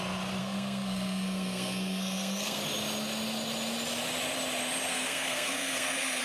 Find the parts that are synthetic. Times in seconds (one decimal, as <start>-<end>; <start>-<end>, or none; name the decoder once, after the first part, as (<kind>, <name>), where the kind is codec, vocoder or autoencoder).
0.4-2.6 (codec, SNAC); 4.9-6.2